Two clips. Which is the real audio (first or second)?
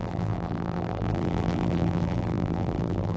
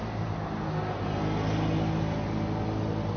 second